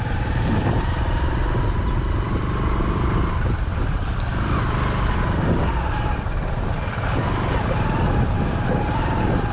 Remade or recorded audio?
recorded